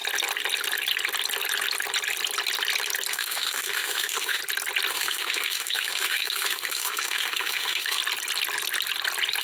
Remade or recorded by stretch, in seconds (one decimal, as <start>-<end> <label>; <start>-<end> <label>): 0.0-3.1 recorded; 3.1-4.4 remade; 4.4-4.9 recorded; 4.9-8.0 remade; 8.0-9.4 recorded